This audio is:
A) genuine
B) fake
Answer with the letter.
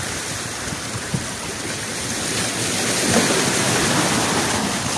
B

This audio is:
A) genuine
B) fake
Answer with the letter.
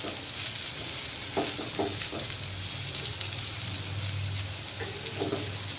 A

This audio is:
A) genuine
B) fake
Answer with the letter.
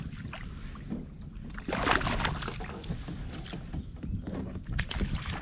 A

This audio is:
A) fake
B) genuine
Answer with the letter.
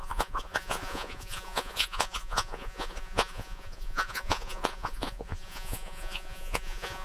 A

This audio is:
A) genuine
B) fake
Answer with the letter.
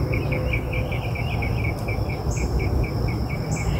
A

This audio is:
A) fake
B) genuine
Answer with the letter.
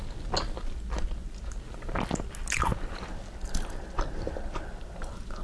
B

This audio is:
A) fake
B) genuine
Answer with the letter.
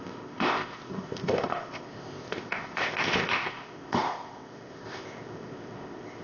A